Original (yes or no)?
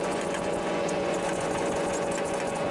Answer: no